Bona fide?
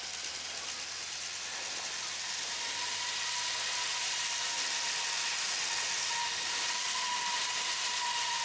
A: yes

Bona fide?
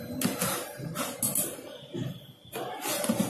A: yes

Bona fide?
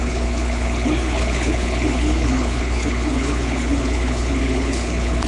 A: no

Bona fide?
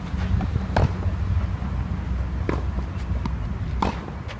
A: yes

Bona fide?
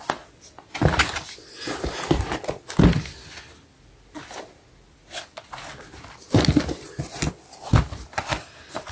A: yes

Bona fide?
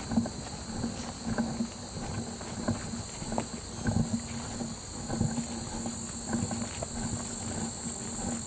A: yes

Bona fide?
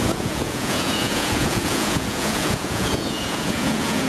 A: no